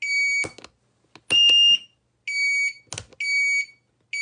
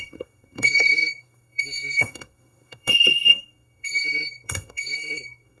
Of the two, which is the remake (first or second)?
second